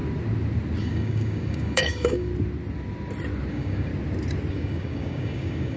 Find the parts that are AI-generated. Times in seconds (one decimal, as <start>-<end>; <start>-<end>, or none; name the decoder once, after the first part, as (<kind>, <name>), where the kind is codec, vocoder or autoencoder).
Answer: 0.8-2.3 (codec, DAC); 3.5-3.9; 4.5-5.8